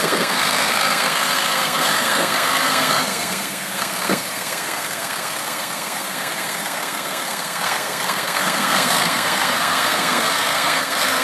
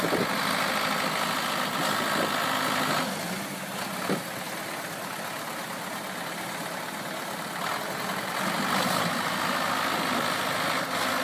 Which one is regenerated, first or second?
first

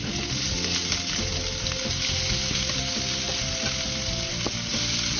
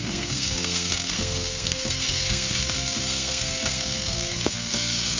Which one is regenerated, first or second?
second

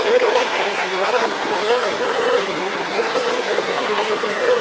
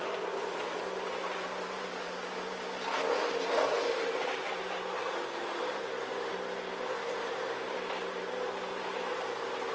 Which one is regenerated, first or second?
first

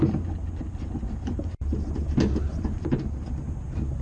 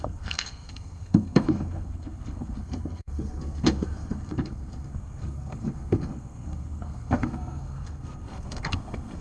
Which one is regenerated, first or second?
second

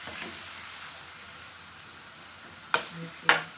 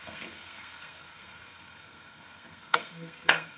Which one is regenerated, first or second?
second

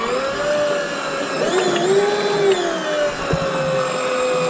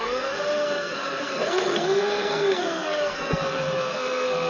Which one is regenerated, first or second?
second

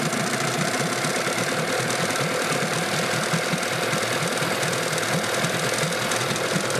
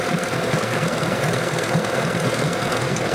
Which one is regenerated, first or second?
second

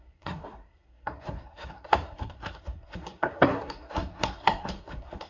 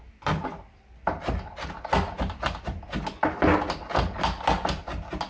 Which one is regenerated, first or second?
first